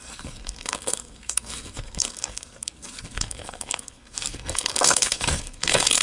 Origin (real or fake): fake